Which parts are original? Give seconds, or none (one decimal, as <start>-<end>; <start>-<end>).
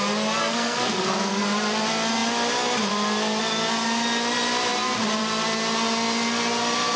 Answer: 0.0-0.4; 1.4-7.0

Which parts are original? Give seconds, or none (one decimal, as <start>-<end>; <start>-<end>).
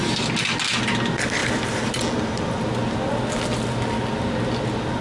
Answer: 0.0-5.0